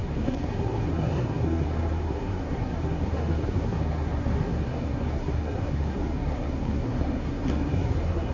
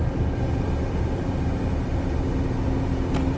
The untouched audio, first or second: second